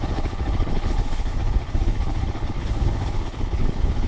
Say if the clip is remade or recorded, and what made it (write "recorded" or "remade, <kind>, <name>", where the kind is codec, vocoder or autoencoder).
remade, codec, HILCodec